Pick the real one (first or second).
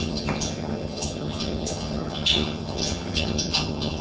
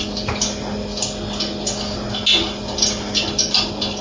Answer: second